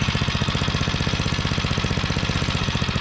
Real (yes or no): yes